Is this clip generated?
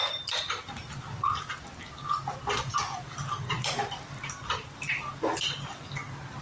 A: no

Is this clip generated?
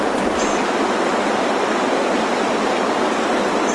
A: yes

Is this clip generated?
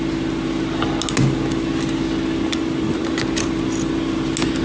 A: no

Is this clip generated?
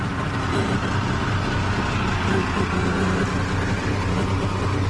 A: no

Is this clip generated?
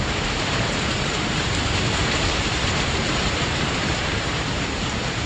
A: yes